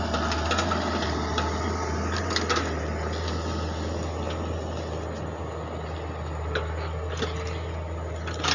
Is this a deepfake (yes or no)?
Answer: no